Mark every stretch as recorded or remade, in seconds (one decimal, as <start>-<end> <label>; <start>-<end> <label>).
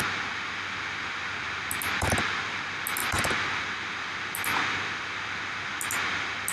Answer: 0.0-6.5 recorded